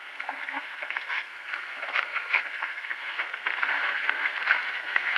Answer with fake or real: fake